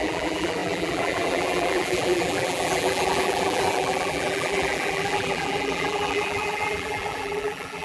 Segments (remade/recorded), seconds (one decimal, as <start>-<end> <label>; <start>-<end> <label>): 0.0-7.8 remade